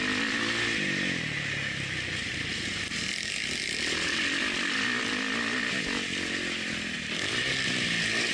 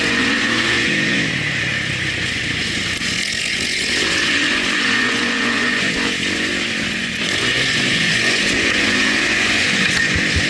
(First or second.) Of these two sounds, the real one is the first